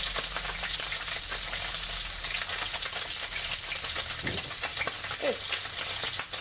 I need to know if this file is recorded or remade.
recorded